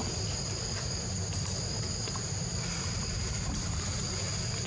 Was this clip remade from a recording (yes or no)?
no